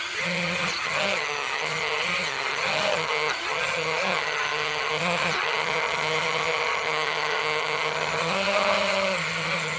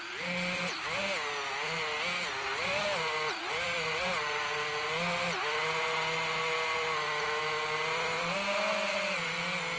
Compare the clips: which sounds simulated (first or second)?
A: first